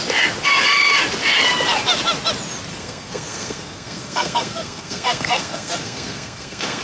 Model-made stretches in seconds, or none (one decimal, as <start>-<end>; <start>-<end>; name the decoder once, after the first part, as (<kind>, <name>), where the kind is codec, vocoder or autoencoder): 2.7-6.8 (codec, SNAC)